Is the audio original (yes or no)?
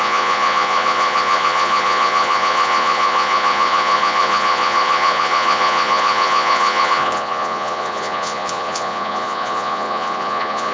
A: no